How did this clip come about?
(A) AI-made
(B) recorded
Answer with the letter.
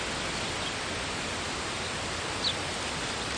B